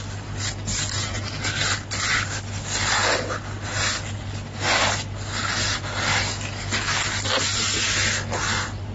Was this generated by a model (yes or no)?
no